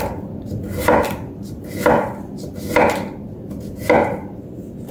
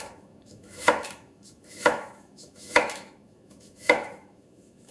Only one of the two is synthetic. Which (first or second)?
second